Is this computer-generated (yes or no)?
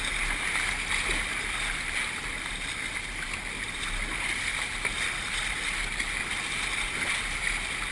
no